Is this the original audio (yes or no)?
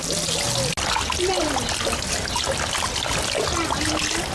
yes